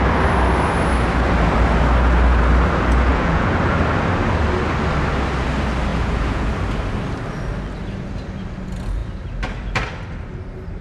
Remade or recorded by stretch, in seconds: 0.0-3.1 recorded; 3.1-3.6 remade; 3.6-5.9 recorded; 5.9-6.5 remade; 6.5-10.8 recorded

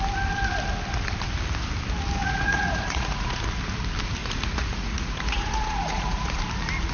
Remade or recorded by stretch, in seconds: 0.0-2.2 recorded; 2.2-3.4 remade; 3.4-4.2 recorded; 4.2-6.4 remade; 6.4-6.9 recorded

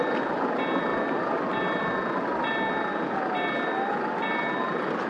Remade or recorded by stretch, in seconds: 0.0-5.1 recorded